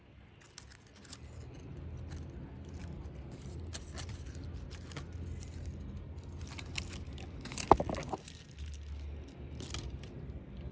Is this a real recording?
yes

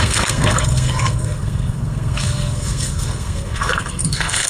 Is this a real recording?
no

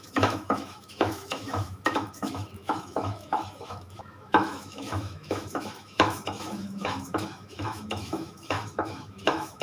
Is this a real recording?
no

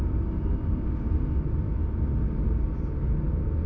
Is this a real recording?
yes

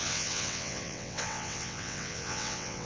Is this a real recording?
no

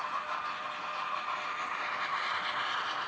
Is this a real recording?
yes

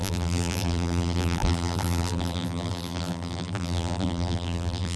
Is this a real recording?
no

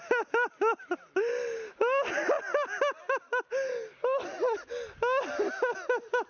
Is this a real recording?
yes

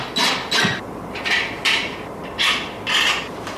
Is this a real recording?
yes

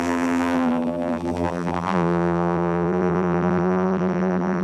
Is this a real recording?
no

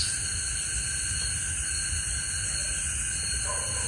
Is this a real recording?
yes